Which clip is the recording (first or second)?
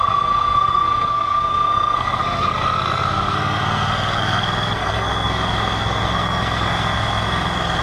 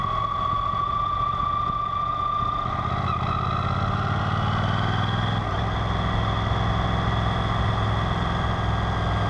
second